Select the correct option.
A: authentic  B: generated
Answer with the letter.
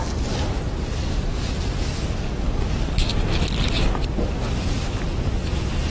A